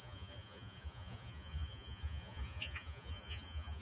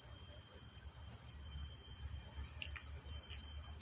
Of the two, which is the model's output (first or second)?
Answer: first